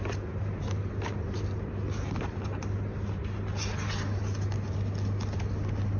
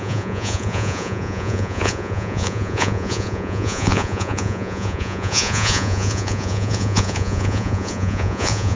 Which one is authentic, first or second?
first